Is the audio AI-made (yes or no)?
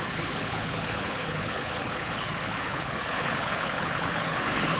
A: yes